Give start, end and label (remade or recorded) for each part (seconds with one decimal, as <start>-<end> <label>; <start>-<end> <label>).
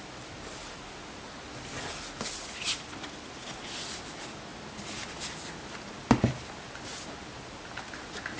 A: 0.0-8.4 recorded